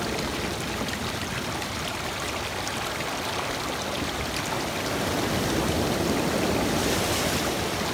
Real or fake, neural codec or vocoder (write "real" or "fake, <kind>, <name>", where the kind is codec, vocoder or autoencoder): real